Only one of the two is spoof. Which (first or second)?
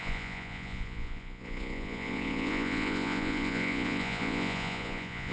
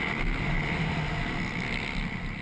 first